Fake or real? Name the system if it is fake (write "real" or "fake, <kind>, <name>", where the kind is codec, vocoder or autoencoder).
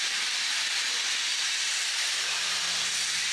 fake, vocoder, BigVGAN v2